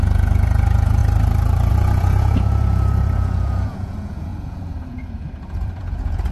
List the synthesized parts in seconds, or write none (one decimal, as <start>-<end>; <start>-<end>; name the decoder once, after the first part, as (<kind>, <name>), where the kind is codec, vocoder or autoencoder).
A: 0.0-1.0 (vocoder, Vocos); 1.7-6.3